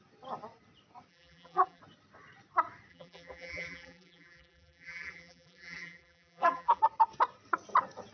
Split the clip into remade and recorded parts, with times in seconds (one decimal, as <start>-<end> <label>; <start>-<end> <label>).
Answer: 0.0-1.1 recorded; 1.1-1.8 remade; 1.8-2.9 recorded; 2.9-6.8 remade; 6.8-8.1 recorded